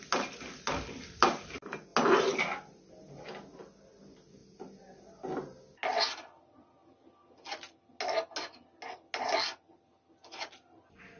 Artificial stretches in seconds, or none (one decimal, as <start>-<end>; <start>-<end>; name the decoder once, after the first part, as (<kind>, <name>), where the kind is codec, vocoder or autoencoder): none